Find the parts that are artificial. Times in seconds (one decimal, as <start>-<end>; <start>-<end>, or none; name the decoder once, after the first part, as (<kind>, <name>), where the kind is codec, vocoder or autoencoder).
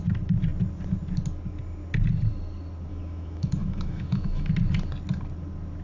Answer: 2.9-4.5 (autoencoder, DAC-VAE)